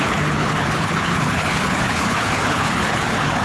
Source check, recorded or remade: remade